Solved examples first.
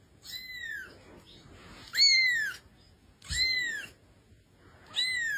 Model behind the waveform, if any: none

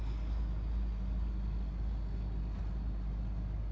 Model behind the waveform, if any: none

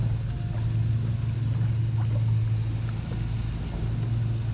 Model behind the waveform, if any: none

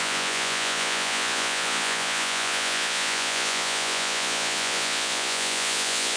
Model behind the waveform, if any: vocoder, Vocos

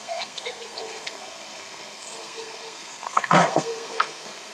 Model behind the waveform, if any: codec, SNAC